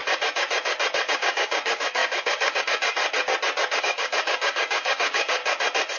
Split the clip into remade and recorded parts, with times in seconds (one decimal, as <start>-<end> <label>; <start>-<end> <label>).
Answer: 0.0-1.1 recorded; 1.1-3.0 remade; 3.0-3.8 recorded; 3.8-5.4 remade; 5.4-6.0 recorded